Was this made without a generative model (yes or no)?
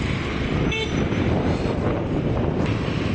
yes